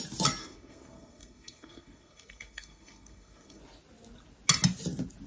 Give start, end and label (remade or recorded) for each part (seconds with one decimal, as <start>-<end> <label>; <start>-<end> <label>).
0.0-0.4 recorded; 0.4-3.6 remade; 3.6-5.3 recorded